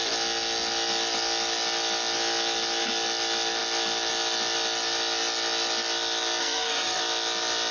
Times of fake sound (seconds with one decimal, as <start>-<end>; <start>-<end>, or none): 6.4-7.0